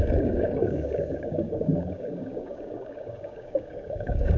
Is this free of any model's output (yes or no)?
no